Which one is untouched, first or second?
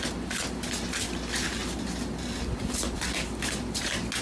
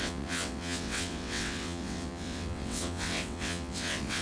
first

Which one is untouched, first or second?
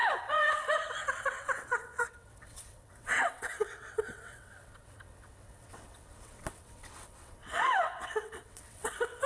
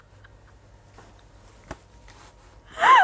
second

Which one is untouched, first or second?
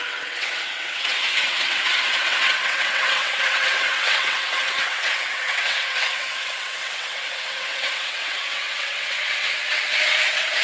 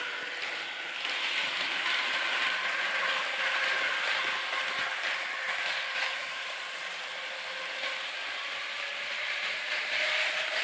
second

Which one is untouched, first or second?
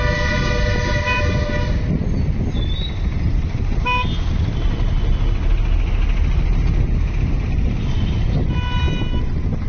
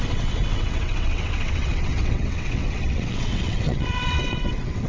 first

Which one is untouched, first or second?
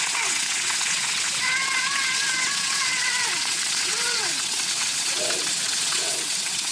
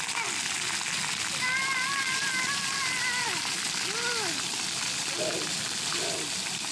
second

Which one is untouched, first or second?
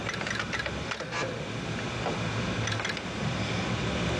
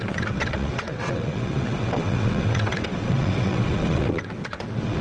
first